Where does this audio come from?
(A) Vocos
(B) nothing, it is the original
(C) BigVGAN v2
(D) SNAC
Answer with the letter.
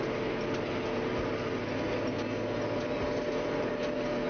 B